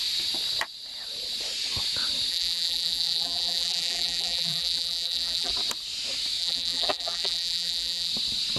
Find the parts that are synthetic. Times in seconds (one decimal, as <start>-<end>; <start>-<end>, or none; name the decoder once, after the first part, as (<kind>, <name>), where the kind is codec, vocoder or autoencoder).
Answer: 2.3-5.5 (vocoder, BigVGAN v2); 6.4-8.1